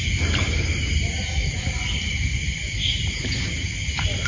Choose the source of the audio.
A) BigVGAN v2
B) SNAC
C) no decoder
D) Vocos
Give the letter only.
C